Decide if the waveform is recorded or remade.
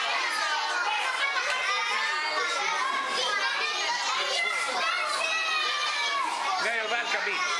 recorded